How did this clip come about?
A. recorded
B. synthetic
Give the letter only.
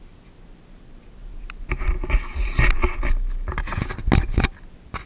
A